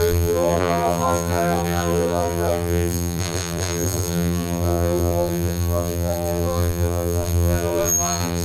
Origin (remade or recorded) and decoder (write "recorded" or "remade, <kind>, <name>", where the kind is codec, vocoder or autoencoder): remade, vocoder, BigVGAN v2